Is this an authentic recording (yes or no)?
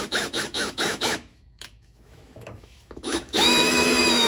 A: no